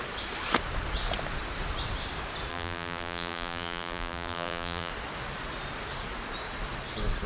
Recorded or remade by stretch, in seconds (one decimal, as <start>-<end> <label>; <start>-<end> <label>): 0.0-2.5 recorded; 2.5-4.9 remade; 4.9-7.3 recorded